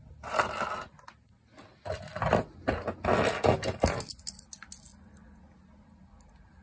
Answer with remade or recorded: recorded